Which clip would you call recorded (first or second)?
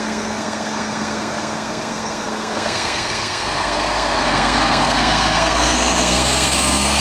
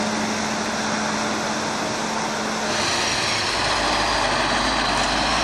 second